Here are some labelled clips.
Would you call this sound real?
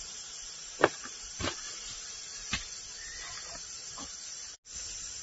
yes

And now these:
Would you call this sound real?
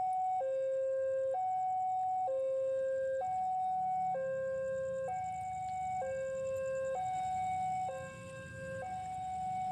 yes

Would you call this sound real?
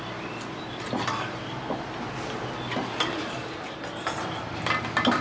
yes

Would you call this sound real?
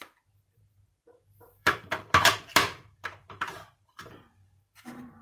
no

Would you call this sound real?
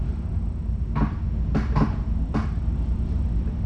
yes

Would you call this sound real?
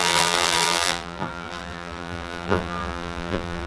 no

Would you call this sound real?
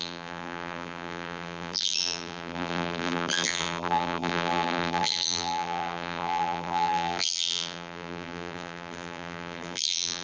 no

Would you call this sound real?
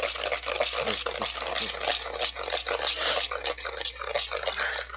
yes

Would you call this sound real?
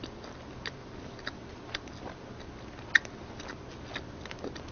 yes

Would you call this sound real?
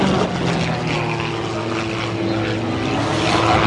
yes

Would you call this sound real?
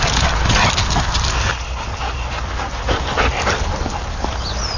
yes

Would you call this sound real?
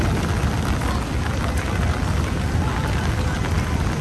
yes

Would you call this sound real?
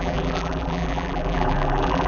no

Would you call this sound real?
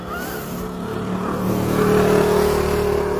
yes